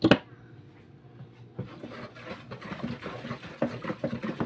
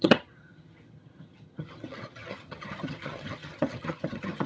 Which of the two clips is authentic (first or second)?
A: first